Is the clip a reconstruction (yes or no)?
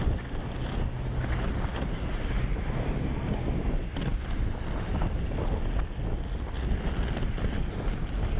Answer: no